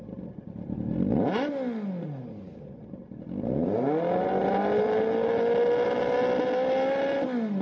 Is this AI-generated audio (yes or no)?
no